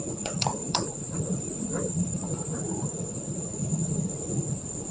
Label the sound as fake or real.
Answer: fake